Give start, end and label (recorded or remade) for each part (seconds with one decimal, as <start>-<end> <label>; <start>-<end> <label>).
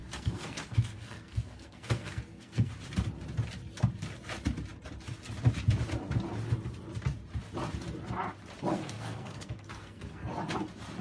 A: 0.0-2.7 remade; 2.7-8.7 recorded; 8.7-10.3 remade; 10.3-11.0 recorded